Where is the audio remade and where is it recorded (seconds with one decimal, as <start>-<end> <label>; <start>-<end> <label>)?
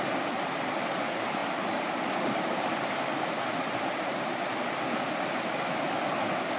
0.0-1.4 recorded; 1.4-3.4 remade; 3.4-6.6 recorded